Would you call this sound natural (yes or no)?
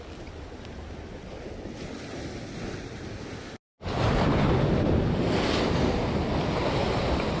yes